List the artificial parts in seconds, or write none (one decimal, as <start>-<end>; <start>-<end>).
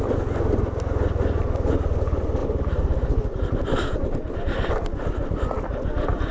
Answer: none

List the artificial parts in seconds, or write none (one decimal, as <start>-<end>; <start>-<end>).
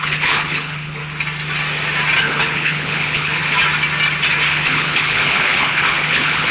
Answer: 0.0-1.0; 2.2-3.4; 4.5-6.5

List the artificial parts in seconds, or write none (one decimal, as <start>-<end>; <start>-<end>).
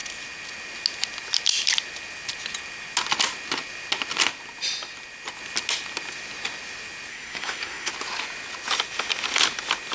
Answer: 7.1-7.9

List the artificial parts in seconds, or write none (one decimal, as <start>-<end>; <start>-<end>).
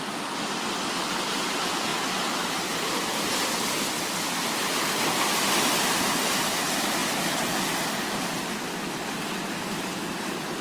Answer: 1.9-3.9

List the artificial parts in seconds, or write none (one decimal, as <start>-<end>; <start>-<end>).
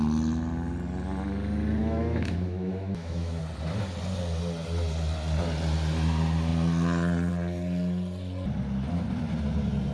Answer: 1.8-3.4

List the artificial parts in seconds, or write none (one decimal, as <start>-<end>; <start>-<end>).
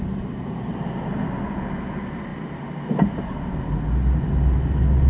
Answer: none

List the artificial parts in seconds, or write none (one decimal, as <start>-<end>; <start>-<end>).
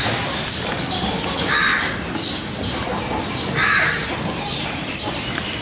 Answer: none